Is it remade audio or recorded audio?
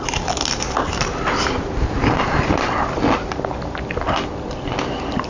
recorded